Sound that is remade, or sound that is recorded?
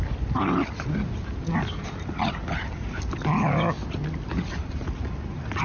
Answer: recorded